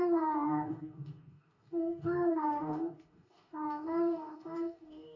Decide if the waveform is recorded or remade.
remade